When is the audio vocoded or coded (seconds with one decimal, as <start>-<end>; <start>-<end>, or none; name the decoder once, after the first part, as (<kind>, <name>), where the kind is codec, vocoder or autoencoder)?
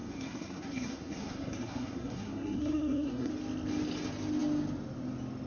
0.0-3.3 (codec, SNAC)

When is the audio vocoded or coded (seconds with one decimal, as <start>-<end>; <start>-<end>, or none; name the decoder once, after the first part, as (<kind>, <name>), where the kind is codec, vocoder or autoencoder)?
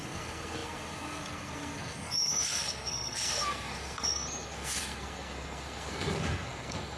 0.0-7.0 (codec, SNAC)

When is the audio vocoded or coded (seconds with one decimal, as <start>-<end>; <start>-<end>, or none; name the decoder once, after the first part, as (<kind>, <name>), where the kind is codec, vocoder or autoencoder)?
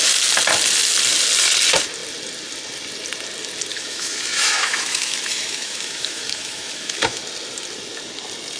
3.7-7.2 (autoencoder, DAC-VAE)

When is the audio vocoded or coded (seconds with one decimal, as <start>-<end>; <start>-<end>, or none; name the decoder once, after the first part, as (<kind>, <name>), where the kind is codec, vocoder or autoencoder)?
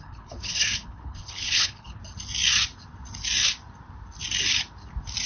0.0-2.0 (codec, HILCodec)